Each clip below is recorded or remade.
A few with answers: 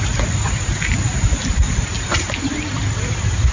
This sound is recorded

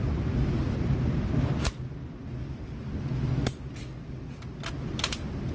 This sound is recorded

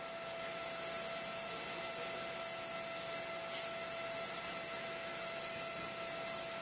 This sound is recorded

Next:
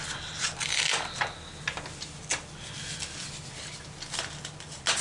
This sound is recorded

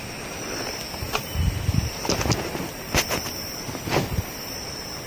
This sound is recorded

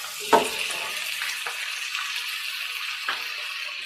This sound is recorded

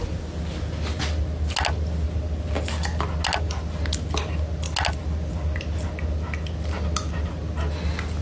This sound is recorded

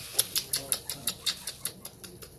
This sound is recorded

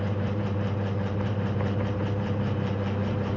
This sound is remade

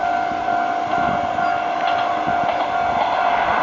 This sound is recorded